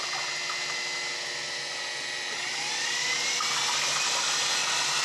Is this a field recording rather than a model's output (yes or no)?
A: yes